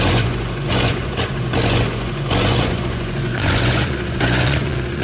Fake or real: fake